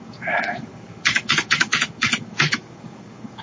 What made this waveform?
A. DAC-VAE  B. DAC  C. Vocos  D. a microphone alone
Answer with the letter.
B